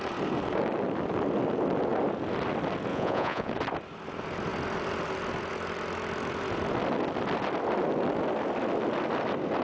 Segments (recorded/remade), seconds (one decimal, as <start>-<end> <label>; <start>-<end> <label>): 0.0-2.9 recorded; 2.9-3.5 remade; 3.5-9.6 recorded